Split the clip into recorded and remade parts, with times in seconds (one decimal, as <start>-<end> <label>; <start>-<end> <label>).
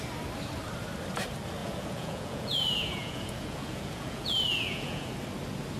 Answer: 0.0-1.6 recorded; 1.6-5.1 remade; 5.1-5.8 recorded